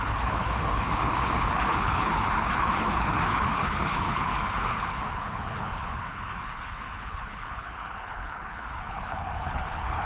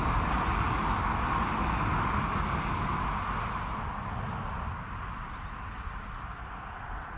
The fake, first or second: first